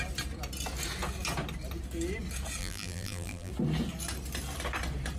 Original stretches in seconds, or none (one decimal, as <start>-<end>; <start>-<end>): 0.0-2.6; 3.5-5.2

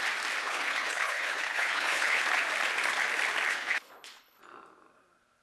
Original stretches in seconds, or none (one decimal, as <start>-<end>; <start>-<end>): 0.0-0.4; 2.2-3.5; 4.4-5.4